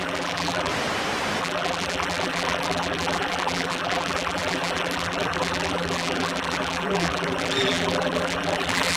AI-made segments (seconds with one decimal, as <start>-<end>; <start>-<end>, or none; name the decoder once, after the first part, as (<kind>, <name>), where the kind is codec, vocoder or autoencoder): 0.0-0.7 (vocoder, BigVGAN v2); 1.4-9.0